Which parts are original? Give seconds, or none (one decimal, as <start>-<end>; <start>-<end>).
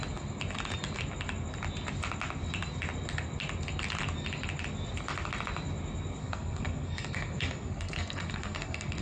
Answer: 0.0-6.2